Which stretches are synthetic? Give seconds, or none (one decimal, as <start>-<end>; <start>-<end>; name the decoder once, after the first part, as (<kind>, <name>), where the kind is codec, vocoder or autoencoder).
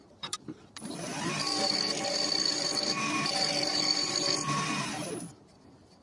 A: 0.0-6.0 (vocoder, BigVGAN v2)